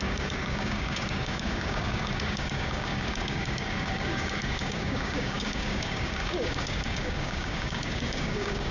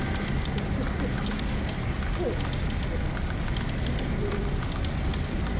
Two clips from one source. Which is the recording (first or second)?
second